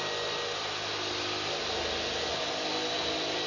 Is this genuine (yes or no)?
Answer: yes